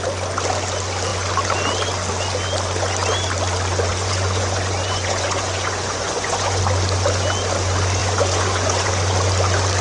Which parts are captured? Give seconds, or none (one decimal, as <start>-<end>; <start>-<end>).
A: 0.0-3.9; 6.6-8.0; 8.9-9.8